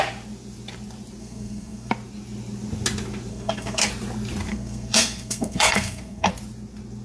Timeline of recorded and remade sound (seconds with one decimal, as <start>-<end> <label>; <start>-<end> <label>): 0.0-1.2 recorded; 1.2-1.9 remade; 1.9-3.3 recorded; 3.3-3.9 remade; 3.9-4.5 recorded; 4.5-6.3 remade; 6.3-7.0 recorded

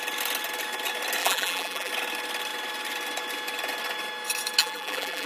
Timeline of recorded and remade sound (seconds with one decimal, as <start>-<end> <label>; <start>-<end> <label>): 0.0-1.2 recorded; 1.2-1.9 remade; 1.9-4.6 recorded; 4.6-5.3 remade

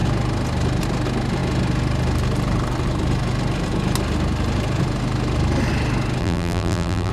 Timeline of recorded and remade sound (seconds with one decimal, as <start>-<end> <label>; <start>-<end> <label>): 0.0-6.2 recorded; 6.2-7.1 remade

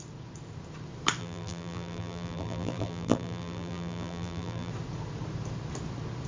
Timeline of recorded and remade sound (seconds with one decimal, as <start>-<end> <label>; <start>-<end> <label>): 0.0-1.2 recorded; 1.2-4.7 remade; 4.7-6.3 recorded

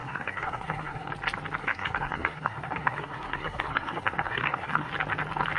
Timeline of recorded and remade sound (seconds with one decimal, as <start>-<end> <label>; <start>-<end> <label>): 0.0-1.1 remade; 1.1-1.6 recorded; 1.6-4.9 remade; 4.9-5.6 recorded

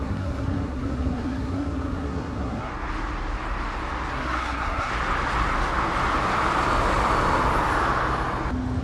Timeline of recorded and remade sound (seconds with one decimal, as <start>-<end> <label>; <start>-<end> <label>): 0.0-2.7 remade; 2.7-4.1 recorded; 4.1-4.9 remade; 4.9-8.8 recorded